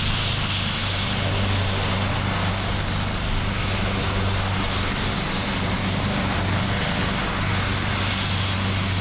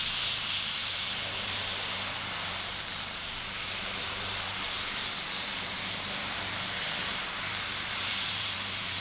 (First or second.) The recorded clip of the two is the first